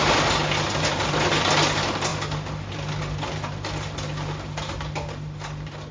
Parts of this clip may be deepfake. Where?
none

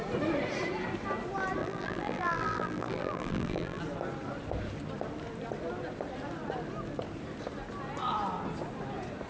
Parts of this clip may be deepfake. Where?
1.6-3.8

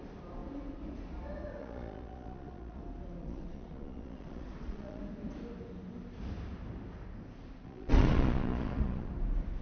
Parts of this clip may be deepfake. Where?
1.6-2.8; 3.2-5.0; 7.6-9.1

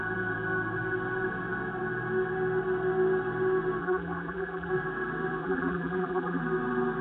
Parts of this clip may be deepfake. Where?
3.8-4.7; 5.4-6.4

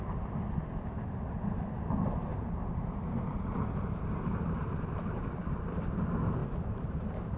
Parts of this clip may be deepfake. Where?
2.3-5.7; 6.4-7.4

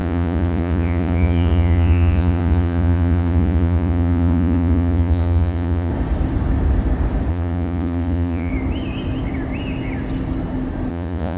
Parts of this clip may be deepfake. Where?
0.0-5.9; 7.3-8.5; 10.9-11.4

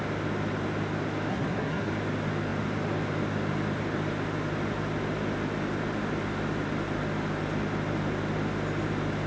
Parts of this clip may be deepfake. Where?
1.3-1.9

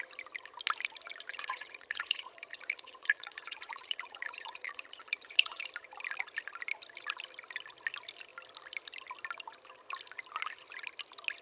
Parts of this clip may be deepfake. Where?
1.3-5.6